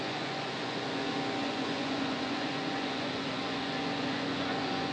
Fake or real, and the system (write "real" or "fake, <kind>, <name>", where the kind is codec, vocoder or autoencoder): fake, vocoder, Vocos